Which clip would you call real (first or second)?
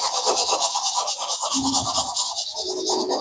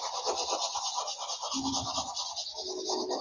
second